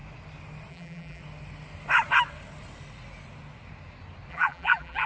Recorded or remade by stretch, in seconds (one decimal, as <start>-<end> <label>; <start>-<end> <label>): 0.0-0.7 recorded; 0.7-1.2 remade; 1.2-4.3 recorded; 4.3-5.1 remade